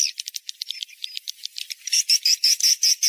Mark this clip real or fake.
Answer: real